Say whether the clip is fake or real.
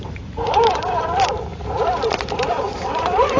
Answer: fake